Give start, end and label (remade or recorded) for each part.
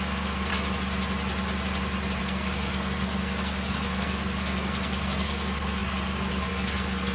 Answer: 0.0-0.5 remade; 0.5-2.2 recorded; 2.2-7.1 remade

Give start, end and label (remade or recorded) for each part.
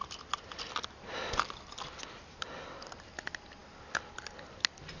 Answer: 0.0-5.0 recorded